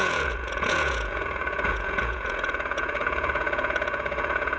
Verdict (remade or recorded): remade